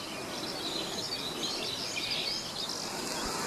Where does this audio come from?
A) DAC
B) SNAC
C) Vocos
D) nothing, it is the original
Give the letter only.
D